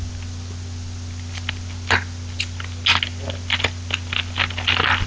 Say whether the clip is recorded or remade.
recorded